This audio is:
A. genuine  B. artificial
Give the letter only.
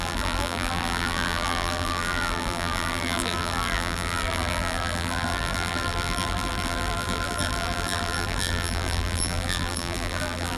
B